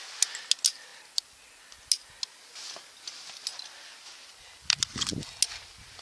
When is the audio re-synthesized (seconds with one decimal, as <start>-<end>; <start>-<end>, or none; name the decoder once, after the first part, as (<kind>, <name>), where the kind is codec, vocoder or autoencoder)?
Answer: none